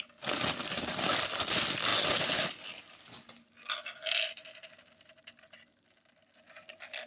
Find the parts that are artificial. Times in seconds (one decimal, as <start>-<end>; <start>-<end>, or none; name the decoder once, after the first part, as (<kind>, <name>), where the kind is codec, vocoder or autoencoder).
none